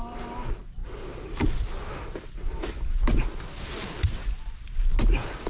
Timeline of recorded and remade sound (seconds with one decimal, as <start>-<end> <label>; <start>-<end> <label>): 0.0-5.5 recorded